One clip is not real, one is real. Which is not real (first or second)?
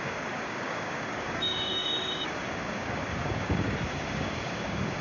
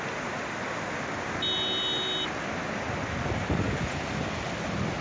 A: first